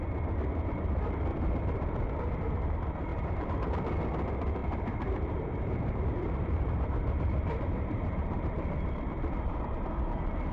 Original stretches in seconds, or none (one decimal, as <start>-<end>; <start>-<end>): 0.0-1.3; 2.1-3.1; 3.7-4.6; 9.6-10.5